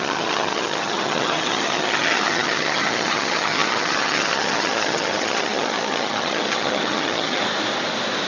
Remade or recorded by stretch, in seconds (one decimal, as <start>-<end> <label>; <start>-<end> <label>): 0.0-7.4 remade; 7.4-8.3 recorded